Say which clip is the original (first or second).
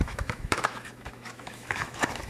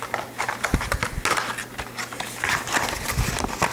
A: second